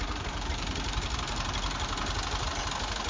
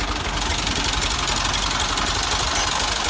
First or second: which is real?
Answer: second